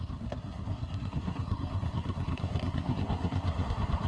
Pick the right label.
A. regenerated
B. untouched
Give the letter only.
A